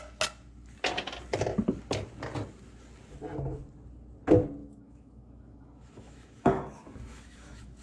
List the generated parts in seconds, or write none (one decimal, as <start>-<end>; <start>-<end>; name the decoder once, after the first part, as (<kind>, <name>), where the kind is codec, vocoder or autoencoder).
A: 4.6-7.8 (autoencoder, DAC-VAE)